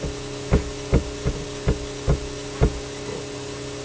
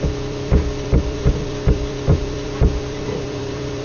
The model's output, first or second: second